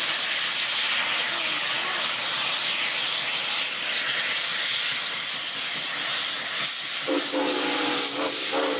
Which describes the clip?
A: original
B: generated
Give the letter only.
A